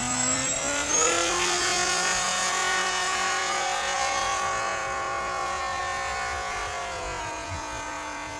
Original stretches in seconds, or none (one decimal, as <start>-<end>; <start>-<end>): 0.0-1.6